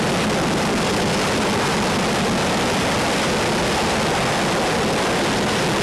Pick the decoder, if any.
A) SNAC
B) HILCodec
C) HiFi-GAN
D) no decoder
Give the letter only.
D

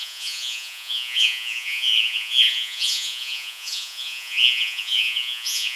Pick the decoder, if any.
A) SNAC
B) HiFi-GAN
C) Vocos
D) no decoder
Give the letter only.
C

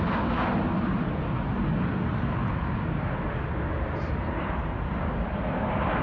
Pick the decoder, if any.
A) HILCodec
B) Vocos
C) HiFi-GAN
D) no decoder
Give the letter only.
D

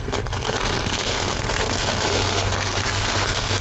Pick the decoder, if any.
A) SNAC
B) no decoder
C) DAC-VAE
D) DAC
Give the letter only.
A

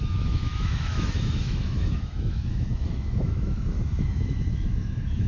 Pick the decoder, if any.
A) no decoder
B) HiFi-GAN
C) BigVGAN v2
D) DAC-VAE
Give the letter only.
D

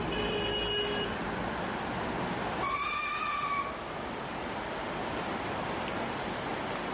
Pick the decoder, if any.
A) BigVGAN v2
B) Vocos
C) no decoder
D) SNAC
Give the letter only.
C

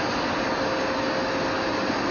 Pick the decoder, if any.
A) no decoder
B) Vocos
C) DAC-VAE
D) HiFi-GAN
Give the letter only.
A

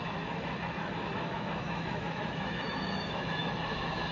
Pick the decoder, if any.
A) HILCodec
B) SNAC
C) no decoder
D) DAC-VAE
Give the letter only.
D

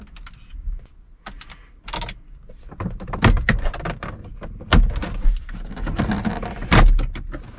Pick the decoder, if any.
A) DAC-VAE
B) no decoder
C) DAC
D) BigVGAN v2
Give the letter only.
B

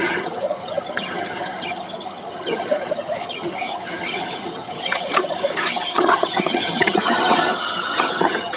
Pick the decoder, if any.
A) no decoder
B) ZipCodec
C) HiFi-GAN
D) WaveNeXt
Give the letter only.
C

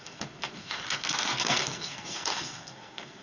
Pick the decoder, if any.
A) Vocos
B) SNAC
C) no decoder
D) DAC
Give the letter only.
B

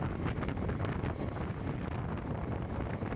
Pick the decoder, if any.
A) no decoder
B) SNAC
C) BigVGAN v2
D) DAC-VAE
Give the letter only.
A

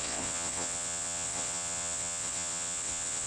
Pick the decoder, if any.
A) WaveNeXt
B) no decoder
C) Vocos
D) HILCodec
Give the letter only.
A